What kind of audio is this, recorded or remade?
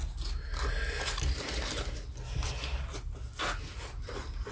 recorded